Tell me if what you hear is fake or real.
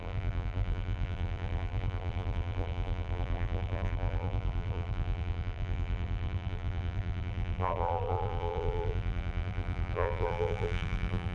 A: fake